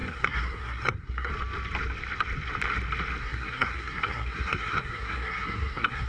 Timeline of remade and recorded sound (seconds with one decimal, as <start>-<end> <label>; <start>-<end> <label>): 0.0-1.3 remade; 1.3-3.2 recorded; 3.2-6.1 remade

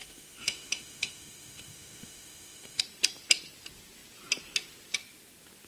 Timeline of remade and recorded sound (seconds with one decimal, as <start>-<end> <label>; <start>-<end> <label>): 0.0-2.8 remade; 2.8-5.7 recorded